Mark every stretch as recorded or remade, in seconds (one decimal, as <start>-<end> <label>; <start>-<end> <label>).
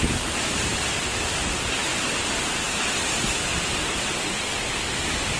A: 0.0-0.7 remade; 0.7-1.3 recorded; 1.3-1.9 remade; 1.9-5.4 recorded